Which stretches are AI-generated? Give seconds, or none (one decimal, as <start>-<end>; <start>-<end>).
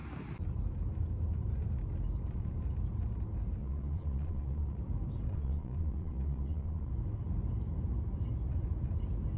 3.6-4.8; 5.3-6.9